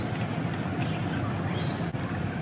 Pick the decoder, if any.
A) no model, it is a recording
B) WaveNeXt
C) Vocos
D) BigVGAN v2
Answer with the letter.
A